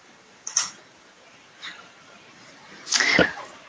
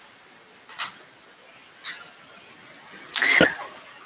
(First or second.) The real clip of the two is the second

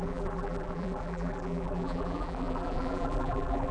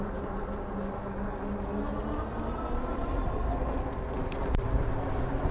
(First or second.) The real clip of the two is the second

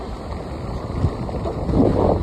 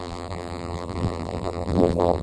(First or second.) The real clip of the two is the first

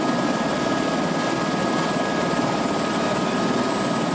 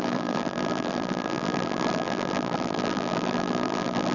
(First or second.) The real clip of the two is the first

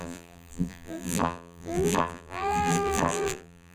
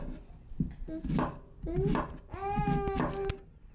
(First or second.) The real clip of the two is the second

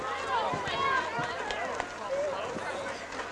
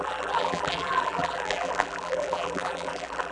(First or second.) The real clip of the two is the first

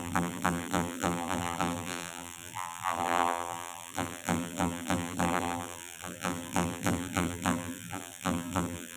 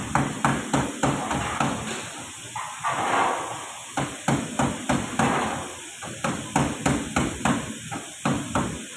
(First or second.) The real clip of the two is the second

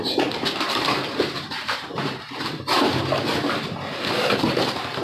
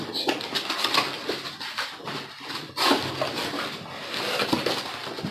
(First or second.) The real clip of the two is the second